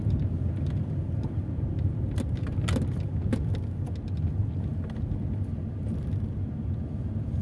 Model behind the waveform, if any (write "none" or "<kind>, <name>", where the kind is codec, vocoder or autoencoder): none